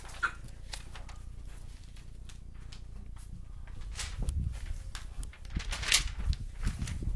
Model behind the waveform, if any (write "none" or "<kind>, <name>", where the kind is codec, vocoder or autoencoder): none